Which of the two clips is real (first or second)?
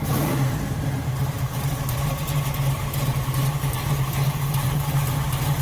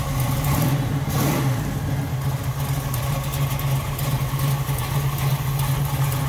second